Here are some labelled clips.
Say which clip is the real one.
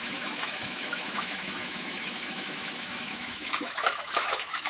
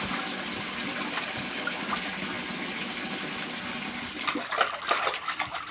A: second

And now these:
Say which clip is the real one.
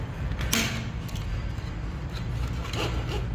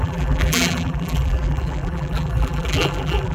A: first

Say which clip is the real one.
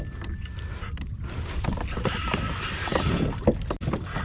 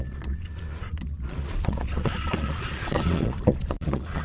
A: first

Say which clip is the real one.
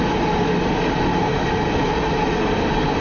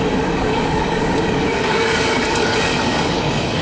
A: first